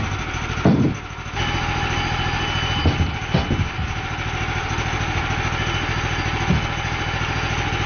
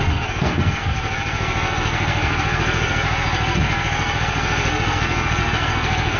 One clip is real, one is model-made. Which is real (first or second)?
first